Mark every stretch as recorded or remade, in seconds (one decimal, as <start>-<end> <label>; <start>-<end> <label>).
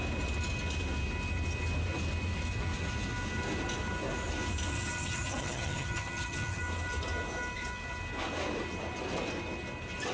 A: 0.0-4.7 recorded; 4.7-6.6 remade; 6.6-10.1 recorded